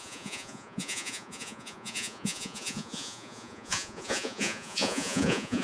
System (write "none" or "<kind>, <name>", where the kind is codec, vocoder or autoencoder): vocoder, Vocos